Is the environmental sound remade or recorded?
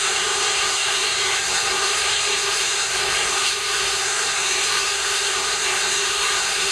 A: remade